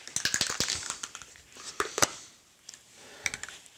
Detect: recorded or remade recorded